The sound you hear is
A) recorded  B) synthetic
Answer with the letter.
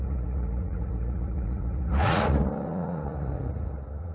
B